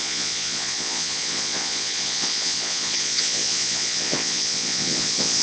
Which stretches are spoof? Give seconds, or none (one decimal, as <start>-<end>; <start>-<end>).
0.0-5.4